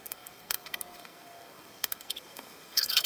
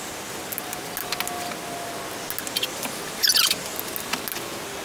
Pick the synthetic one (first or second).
first